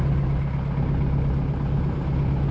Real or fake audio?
real